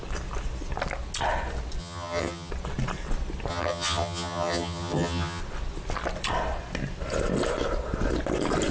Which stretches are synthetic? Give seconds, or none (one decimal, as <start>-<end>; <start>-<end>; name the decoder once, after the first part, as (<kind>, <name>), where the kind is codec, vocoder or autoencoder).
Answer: 1.8-2.5 (vocoder, HiFi-GAN); 3.5-5.4